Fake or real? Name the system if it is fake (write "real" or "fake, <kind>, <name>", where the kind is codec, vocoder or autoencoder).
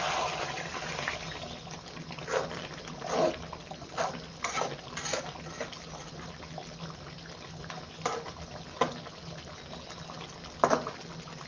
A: real